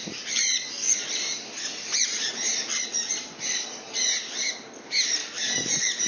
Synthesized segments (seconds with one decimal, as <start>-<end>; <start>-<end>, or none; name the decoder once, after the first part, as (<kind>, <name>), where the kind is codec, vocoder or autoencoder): 0.0-2.7 (vocoder, BigVGAN v2); 5.2-6.1